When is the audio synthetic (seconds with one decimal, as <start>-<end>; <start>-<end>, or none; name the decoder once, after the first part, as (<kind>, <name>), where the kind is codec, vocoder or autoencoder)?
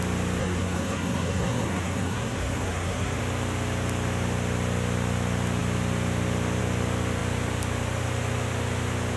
0.4-3.2 (codec, SNAC)